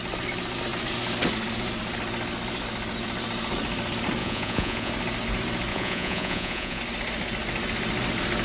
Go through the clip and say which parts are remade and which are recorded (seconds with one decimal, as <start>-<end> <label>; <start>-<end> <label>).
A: 0.0-4.2 recorded; 4.2-4.9 remade; 4.9-5.7 recorded; 5.7-6.8 remade; 6.8-8.4 recorded